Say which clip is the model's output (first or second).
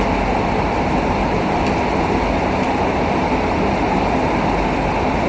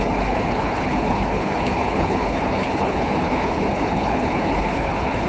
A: second